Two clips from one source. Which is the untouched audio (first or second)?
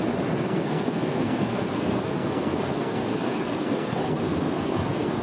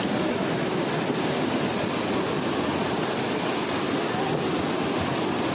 second